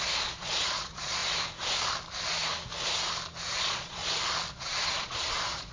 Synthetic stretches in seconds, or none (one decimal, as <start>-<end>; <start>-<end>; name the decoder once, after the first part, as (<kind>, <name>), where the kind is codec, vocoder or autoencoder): 0.0-1.2 (vocoder, Vocos); 3.6-4.0; 4.5-5.7